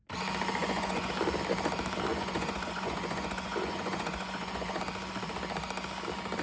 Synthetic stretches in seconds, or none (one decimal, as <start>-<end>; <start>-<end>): 0.6-1.1; 2.1-4.8